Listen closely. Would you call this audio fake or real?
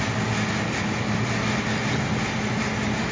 real